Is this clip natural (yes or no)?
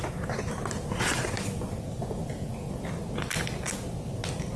yes